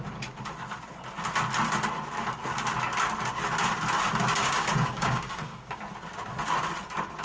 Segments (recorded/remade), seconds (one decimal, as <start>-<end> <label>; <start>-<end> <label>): 0.0-4.4 recorded; 4.4-5.8 remade; 5.8-7.2 recorded